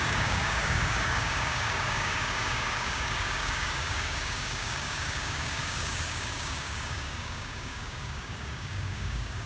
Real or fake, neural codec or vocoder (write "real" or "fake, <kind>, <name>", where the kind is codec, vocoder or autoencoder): fake, codec, DAC